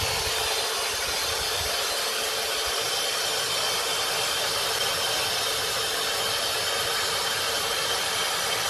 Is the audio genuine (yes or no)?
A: yes